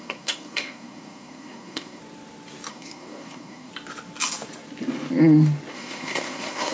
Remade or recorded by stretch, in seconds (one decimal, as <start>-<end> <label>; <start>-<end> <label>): 0.0-2.0 remade; 2.0-2.7 recorded; 2.7-3.7 remade; 3.7-5.7 recorded; 5.7-6.7 remade